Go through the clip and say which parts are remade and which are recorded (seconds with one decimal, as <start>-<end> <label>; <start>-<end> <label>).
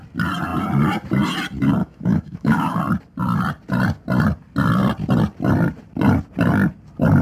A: 0.0-1.8 recorded; 1.8-2.8 remade; 2.8-7.2 recorded